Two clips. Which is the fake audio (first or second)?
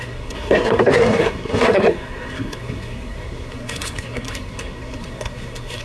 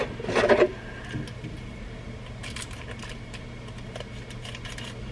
first